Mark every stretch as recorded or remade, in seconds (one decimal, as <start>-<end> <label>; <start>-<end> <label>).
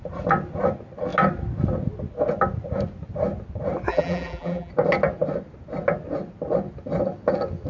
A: 0.0-3.9 recorded; 3.9-4.7 remade; 4.7-7.7 recorded